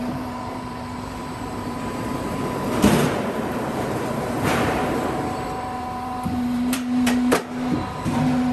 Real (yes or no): no